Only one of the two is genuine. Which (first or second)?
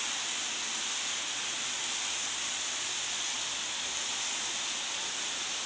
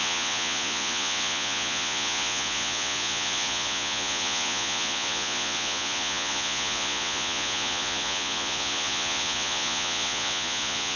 first